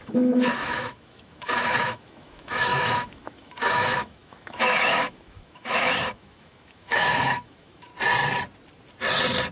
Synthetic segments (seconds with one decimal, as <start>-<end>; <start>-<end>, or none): 0.0-7.9